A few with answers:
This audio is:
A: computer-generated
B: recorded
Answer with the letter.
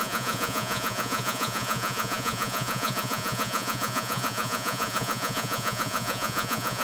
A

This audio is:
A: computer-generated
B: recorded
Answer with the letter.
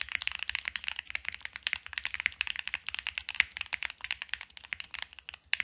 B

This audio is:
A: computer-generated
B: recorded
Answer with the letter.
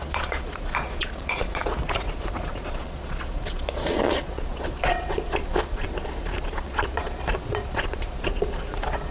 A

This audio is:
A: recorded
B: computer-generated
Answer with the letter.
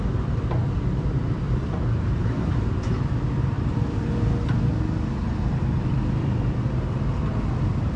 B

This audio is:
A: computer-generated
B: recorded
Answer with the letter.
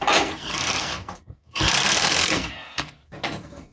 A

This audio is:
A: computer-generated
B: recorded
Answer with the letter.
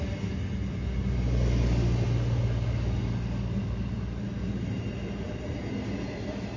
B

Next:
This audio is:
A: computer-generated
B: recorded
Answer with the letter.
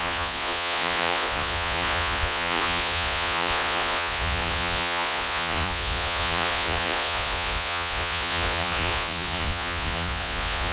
A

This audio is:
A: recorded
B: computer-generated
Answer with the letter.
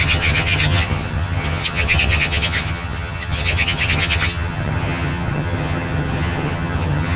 B